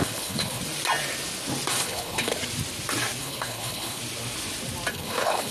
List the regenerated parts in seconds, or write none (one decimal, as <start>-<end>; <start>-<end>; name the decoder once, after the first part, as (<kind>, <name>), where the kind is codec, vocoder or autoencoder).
0.0-0.6 (codec, HILCodec); 1.7-2.3; 3.2-4.0; 4.9-5.5

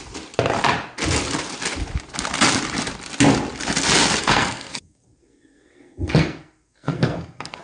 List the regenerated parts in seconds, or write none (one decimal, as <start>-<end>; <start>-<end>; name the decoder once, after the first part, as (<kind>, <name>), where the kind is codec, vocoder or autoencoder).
4.2-7.6 (codec, SNAC)

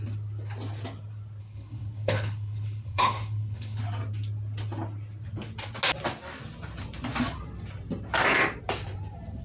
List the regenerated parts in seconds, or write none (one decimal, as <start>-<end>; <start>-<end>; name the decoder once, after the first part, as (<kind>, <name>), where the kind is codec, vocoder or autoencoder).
1.4-3.8 (codec, HILCodec)

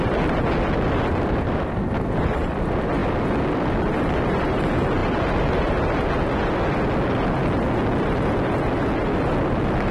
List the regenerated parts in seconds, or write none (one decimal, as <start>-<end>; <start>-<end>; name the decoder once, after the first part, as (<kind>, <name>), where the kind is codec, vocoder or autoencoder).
none

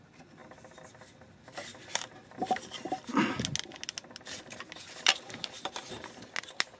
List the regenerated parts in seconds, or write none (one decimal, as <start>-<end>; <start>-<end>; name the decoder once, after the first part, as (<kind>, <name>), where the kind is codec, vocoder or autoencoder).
none

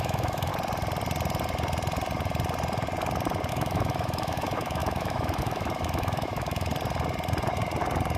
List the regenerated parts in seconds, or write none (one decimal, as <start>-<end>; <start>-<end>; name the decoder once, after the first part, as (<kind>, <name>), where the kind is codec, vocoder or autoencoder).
0.0-0.5 (autoencoder, DAC-VAE); 3.5-6.7